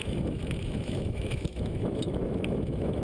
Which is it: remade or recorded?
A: remade